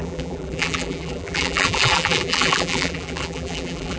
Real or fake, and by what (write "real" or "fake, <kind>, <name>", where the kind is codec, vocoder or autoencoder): fake, vocoder, BigVGAN v2